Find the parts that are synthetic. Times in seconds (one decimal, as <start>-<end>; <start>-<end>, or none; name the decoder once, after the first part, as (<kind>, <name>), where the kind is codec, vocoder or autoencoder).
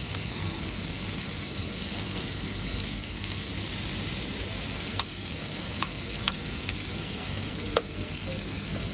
0.0-3.5 (codec, SNAC); 4.7-8.9